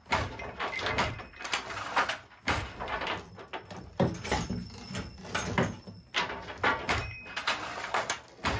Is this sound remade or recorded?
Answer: recorded